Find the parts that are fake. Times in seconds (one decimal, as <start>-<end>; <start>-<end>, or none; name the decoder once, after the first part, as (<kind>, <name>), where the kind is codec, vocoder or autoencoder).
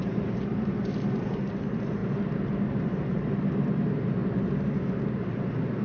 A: 0.0-2.0 (vocoder, BigVGAN v2); 2.7-4.2; 5.3-5.8